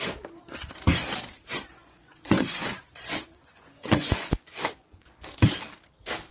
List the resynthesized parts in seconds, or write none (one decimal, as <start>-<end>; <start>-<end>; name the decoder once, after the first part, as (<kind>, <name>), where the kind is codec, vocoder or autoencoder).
1.5-5.3 (vocoder, Vocos)